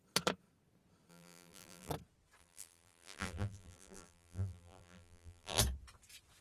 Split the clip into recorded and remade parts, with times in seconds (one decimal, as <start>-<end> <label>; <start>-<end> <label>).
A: 0.0-1.1 recorded; 1.1-1.9 remade; 1.9-2.4 recorded; 2.4-5.6 remade; 5.6-6.4 recorded